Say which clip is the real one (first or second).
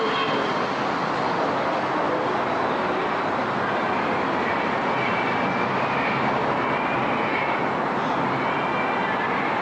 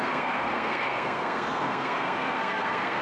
first